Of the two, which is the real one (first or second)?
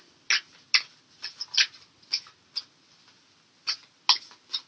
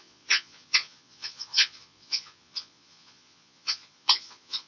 first